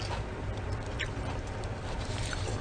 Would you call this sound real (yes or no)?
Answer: no